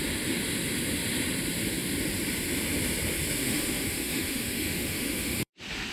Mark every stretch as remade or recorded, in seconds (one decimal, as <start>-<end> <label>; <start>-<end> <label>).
0.0-3.4 recorded; 3.4-5.5 remade; 5.5-5.9 recorded